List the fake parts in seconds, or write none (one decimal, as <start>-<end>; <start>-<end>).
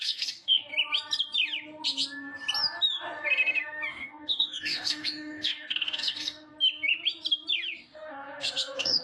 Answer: 0.0-0.7; 3.9-6.5; 7.8-9.0